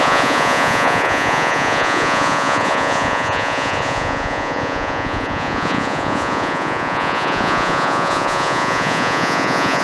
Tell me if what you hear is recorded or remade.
remade